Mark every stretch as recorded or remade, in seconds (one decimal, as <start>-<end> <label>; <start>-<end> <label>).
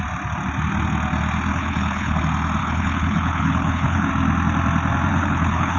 0.0-1.5 recorded; 1.5-2.2 remade; 2.2-2.6 recorded; 2.6-4.1 remade; 4.1-5.1 recorded; 5.1-5.8 remade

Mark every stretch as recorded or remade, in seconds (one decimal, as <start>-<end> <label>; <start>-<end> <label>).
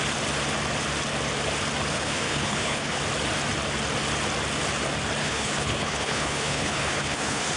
0.0-1.9 recorded; 1.9-3.0 remade; 3.0-5.2 recorded; 5.2-7.6 remade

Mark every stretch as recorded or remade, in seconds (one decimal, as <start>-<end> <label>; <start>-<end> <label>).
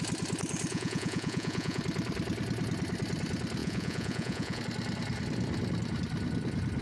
0.0-0.7 recorded; 0.7-1.8 remade; 1.8-3.6 recorded; 3.6-4.6 remade; 4.6-6.8 recorded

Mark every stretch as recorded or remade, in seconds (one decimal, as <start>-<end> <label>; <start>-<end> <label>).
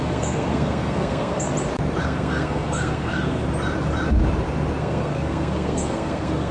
0.0-1.5 remade; 1.5-2.0 recorded; 2.0-3.4 remade; 3.4-4.8 recorded; 4.8-6.5 remade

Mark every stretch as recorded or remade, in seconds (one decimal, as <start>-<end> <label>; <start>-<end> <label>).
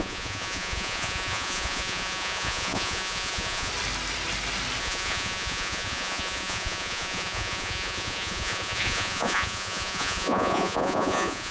0.0-3.7 remade; 3.7-4.8 recorded; 4.8-11.5 remade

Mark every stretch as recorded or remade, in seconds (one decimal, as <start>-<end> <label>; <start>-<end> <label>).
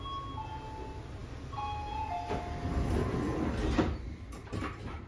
0.0-5.1 recorded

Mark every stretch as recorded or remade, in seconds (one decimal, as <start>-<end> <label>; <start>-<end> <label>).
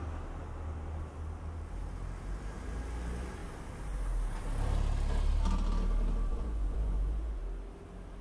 0.0-6.3 recorded; 6.3-7.4 remade; 7.4-8.2 recorded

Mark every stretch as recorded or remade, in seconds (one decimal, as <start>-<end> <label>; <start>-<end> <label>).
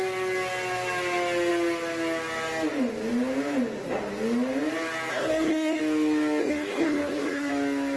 0.0-5.1 recorded; 5.1-5.8 remade; 5.8-6.4 recorded; 6.4-7.5 remade; 7.5-8.0 recorded